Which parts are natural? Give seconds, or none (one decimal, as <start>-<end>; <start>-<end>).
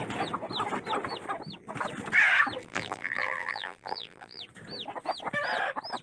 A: 0.0-2.6; 4.4-6.0